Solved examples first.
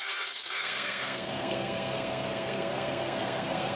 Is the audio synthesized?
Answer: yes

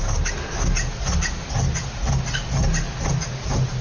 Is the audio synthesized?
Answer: no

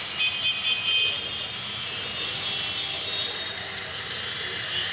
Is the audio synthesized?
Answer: no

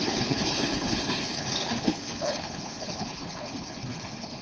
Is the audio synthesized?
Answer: yes